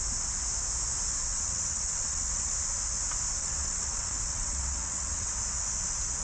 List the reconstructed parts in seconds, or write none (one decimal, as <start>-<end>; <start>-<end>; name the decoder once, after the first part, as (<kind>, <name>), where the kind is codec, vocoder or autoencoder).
1.2-2.5 (vocoder, WaveNeXt); 3.4-5.3